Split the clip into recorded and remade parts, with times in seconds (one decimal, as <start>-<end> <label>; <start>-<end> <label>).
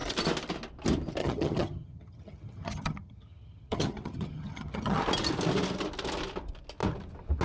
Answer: 0.0-1.2 recorded; 1.2-5.0 remade; 5.0-7.4 recorded